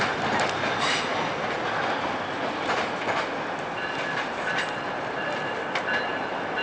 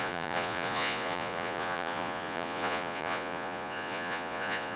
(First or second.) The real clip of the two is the first